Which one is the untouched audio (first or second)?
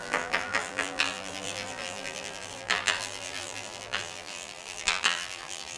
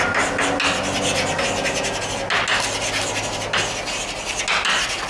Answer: second